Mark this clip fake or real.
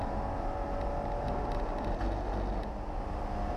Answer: real